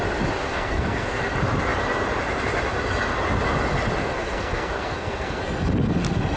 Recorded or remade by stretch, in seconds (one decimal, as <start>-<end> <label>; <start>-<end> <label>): 0.0-0.4 recorded; 0.4-1.2 remade; 1.2-4.0 recorded; 4.0-5.4 remade; 5.4-6.4 recorded